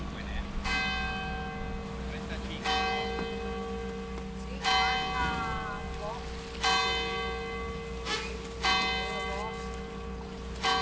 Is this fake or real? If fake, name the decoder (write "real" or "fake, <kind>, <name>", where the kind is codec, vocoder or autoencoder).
real